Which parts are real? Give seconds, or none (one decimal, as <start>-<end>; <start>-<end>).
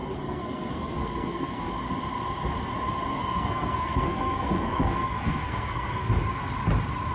1.7-3.1; 6.1-7.1